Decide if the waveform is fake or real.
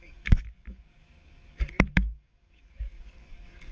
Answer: fake